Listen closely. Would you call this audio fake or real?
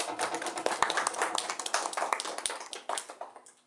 real